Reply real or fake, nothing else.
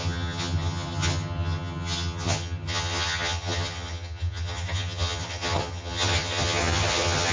fake